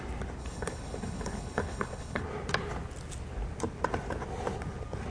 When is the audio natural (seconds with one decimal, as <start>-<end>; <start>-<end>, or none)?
0.0-0.4; 2.2-5.1

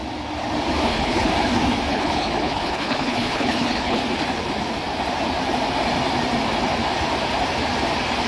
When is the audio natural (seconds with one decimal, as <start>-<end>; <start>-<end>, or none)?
0.0-0.9; 1.3-1.9; 4.0-8.3

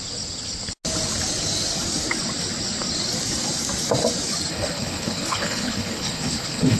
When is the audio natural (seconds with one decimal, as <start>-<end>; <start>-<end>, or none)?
0.0-4.5

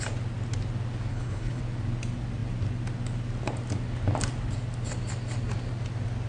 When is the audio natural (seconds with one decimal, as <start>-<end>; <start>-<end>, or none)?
0.0-1.1; 1.6-6.3

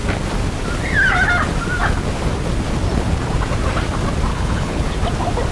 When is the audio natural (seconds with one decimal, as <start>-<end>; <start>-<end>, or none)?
0.0-4.3; 4.9-5.5